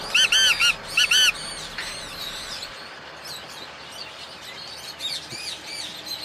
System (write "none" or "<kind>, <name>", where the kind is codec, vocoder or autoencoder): none